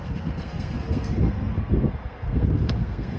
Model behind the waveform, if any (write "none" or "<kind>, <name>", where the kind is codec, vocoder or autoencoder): codec, SNAC